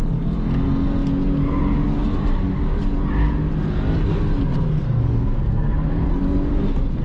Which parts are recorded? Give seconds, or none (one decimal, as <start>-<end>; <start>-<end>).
0.0-4.8; 6.1-7.0